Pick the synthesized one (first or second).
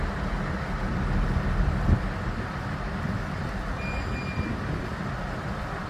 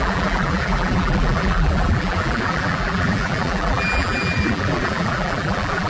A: second